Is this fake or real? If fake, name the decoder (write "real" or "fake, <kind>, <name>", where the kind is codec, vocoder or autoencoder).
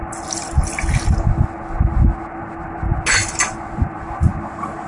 real